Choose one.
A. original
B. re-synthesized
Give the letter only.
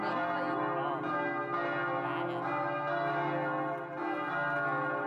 A